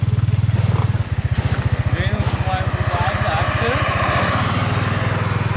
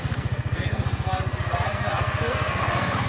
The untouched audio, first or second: first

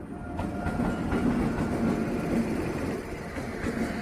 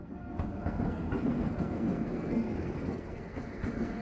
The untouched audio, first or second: first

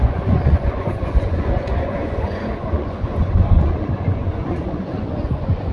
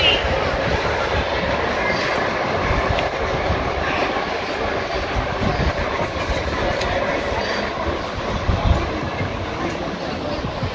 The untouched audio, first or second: second